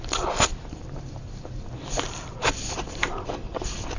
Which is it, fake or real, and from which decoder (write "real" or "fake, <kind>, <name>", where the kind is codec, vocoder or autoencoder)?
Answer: fake, vocoder, BigVGAN v2